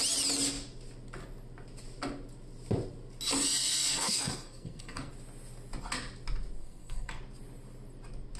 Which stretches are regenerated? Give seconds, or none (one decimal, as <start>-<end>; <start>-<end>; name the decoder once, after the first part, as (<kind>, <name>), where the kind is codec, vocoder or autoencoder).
3.6-5.1 (codec, SNAC); 6.6-7.2